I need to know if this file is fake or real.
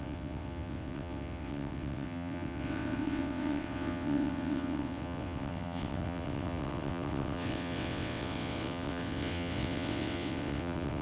fake